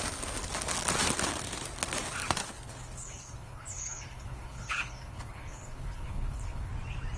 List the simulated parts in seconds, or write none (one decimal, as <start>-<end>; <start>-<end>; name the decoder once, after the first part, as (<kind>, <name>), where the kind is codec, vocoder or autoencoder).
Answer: 2.4-6.7 (codec, HILCodec)